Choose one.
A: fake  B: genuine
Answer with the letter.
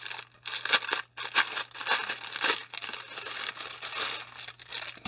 B